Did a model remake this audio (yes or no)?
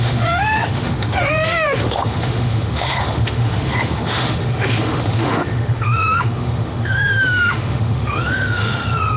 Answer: yes